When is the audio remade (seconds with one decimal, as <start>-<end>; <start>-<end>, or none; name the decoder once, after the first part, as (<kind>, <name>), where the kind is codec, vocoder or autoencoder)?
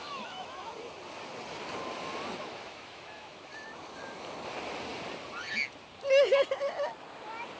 0.0-0.7 (autoencoder, DAC-VAE); 2.4-3.5